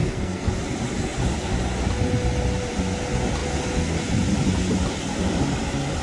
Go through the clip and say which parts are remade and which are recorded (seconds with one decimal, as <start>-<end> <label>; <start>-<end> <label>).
0.0-0.5 remade; 0.5-6.0 recorded